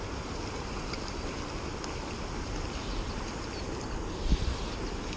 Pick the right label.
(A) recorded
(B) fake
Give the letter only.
A